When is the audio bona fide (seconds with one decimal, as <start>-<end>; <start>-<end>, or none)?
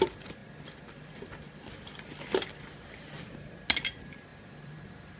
0.0-4.3